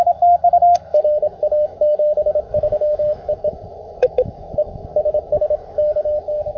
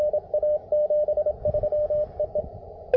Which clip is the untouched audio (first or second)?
second